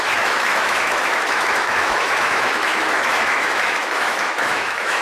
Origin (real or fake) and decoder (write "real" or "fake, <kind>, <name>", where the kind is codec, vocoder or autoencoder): fake, autoencoder, DAC-VAE